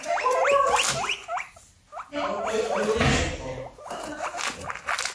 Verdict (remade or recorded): recorded